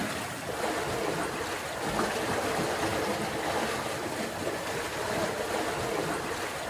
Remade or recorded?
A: recorded